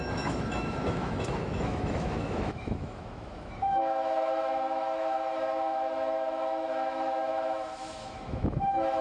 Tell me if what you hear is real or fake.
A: fake